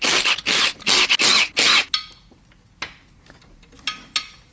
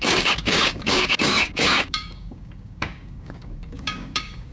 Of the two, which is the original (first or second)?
first